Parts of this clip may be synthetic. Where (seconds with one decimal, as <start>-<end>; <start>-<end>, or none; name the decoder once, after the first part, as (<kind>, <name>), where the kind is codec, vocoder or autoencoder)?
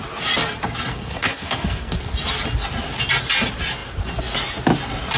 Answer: 0.9-2.1 (codec, SNAC)